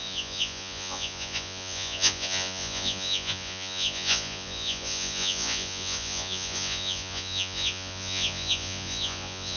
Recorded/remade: remade